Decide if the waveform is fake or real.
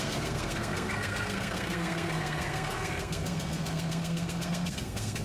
fake